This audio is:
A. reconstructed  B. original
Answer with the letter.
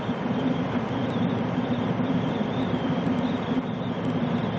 B